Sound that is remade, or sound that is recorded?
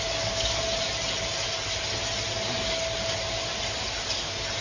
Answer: recorded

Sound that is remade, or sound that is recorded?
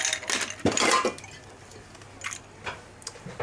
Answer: recorded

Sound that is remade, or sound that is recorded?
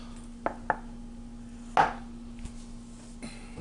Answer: recorded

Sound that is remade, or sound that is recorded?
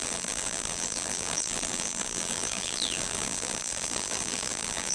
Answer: remade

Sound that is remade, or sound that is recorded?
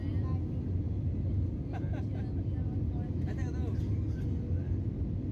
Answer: recorded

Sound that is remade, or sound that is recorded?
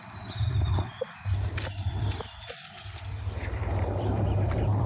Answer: remade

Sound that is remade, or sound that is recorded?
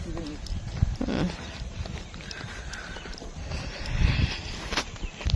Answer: recorded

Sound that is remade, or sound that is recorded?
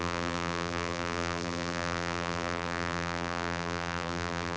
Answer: remade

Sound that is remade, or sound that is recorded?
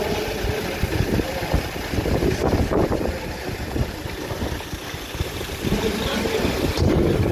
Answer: remade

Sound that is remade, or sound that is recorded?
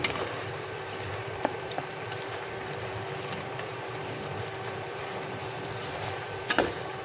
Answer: remade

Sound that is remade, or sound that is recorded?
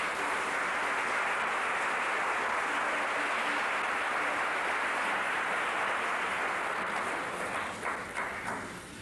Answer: recorded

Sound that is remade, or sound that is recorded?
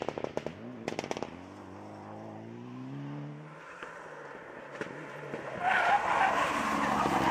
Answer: recorded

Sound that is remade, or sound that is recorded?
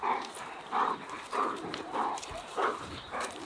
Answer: remade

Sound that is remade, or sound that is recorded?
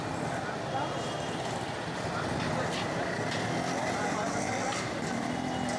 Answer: recorded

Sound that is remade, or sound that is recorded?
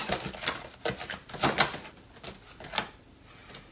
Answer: recorded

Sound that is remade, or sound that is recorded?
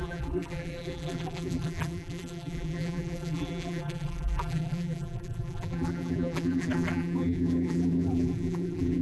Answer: remade